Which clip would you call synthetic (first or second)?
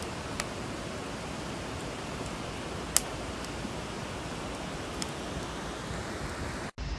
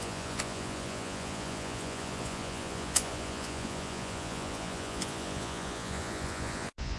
second